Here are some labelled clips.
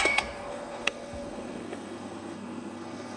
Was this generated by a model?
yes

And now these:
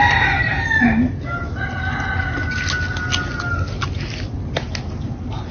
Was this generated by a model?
no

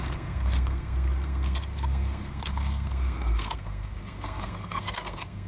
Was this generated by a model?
yes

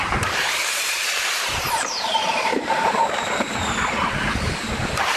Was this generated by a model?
yes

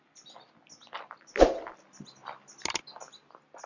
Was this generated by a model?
no